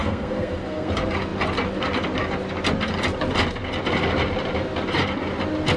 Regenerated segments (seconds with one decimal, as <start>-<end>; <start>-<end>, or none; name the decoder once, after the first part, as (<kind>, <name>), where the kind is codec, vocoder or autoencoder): 0.0-0.9 (codec, SNAC)